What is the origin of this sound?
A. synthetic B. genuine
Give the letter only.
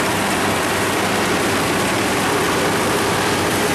A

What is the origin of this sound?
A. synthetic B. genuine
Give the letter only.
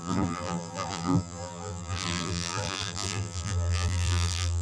A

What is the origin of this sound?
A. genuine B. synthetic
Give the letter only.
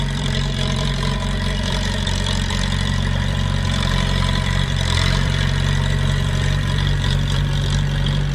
B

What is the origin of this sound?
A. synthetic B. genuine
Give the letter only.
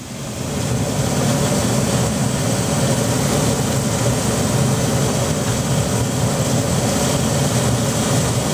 B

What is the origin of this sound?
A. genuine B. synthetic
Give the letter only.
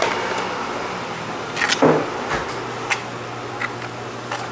A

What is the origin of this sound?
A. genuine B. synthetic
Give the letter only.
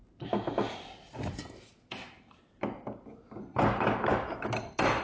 A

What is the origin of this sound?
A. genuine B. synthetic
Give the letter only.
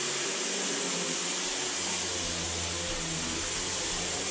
A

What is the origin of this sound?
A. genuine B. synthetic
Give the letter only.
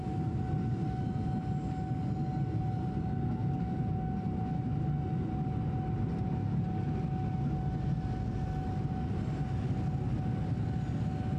A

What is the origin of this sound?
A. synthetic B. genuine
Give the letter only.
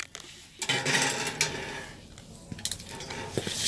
B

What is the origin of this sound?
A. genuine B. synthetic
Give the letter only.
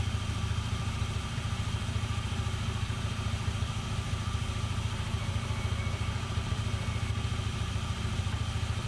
B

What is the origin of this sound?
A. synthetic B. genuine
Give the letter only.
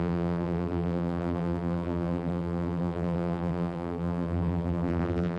A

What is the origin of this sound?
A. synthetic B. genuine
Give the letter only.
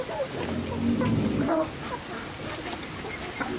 B